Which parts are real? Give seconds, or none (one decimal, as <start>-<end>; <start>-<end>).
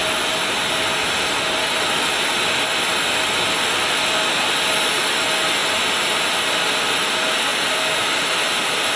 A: 0.0-9.0